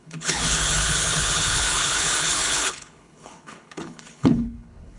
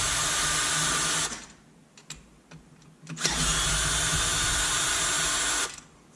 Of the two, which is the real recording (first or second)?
second